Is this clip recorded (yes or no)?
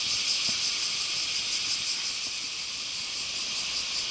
yes